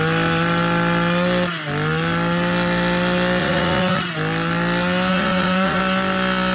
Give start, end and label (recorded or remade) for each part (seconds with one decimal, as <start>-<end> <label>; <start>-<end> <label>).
0.0-3.4 recorded; 3.4-4.1 remade; 4.1-5.1 recorded; 5.1-5.8 remade; 5.8-6.5 recorded